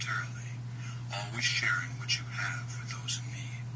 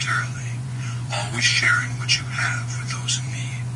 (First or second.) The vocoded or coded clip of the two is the second